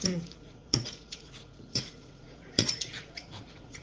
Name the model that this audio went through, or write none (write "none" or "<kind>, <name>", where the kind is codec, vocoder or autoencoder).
vocoder, Vocos